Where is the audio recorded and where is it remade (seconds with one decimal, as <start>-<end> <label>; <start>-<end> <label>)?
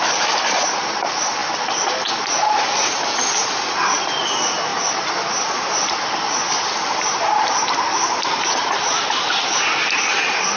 0.0-10.6 recorded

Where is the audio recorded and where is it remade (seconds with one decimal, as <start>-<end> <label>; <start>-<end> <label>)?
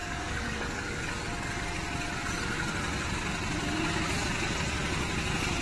0.0-1.1 remade; 1.1-5.6 recorded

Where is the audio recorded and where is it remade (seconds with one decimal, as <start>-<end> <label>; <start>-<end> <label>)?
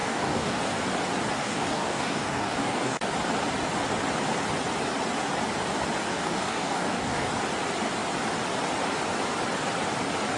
0.0-0.6 remade; 0.6-1.4 recorded; 1.4-3.1 remade; 3.1-6.1 recorded; 6.1-7.3 remade; 7.3-10.4 recorded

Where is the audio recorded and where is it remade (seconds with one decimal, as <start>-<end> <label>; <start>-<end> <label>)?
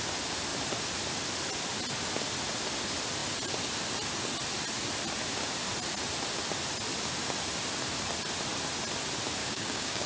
0.0-9.4 recorded; 9.4-10.1 remade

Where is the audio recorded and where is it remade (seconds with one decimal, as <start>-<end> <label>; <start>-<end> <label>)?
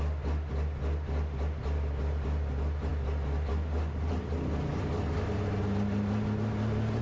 0.0-7.0 recorded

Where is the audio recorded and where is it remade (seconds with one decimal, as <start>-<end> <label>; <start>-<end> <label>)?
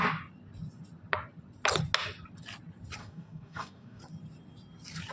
0.0-3.0 recorded; 3.0-4.0 remade; 4.0-5.1 recorded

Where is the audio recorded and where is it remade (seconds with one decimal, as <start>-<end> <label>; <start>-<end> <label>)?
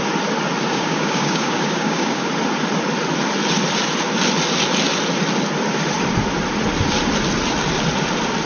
0.0-0.7 recorded; 0.7-2.3 remade; 2.3-8.5 recorded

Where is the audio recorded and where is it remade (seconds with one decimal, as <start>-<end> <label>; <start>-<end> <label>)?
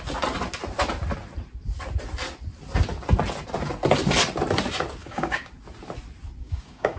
0.0-5.0 recorded; 5.0-5.5 remade; 5.5-6.4 recorded; 6.4-7.0 remade